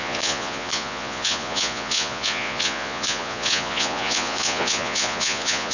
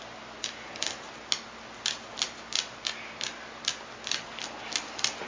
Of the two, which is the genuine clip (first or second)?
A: second